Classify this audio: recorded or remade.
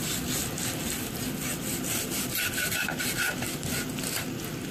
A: recorded